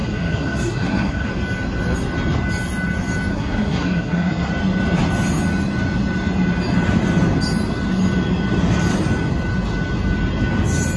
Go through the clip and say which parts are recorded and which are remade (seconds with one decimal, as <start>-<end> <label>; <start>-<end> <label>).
0.0-1.3 remade; 1.3-3.3 recorded; 3.3-4.5 remade; 4.5-11.0 recorded